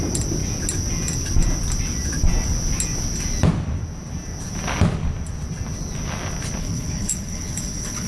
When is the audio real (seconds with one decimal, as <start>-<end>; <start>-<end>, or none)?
0.0-6.6